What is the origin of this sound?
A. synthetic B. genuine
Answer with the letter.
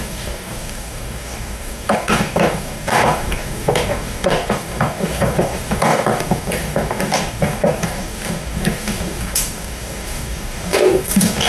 A